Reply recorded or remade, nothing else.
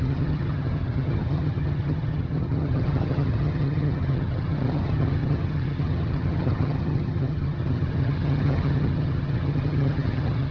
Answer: remade